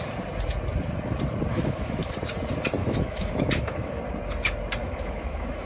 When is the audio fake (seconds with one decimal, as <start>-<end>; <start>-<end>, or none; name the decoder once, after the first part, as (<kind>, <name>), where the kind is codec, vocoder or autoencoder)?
1.5-2.1 (autoencoder, DAC-VAE); 2.8-4.0; 4.8-5.7